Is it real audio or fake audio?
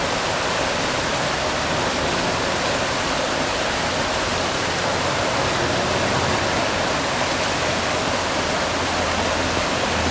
real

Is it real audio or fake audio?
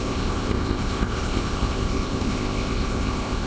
fake